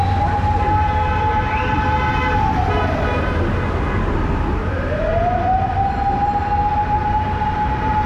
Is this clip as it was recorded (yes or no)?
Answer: yes